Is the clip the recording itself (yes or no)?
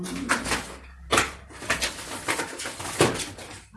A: yes